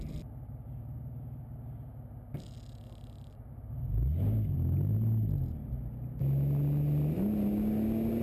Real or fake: real